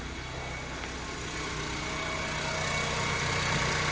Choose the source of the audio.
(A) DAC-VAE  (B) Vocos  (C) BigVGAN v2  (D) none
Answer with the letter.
D